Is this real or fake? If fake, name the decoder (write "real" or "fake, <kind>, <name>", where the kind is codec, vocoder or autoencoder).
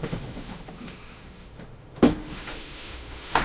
fake, autoencoder, DAC-VAE